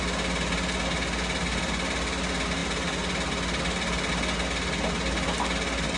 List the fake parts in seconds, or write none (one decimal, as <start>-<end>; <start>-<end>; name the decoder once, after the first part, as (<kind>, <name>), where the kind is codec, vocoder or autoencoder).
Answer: none